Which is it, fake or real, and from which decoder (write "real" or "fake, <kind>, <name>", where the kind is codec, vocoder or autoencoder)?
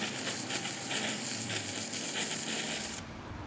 fake, vocoder, BigVGAN v2